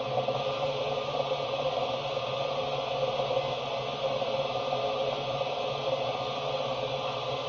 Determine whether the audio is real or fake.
real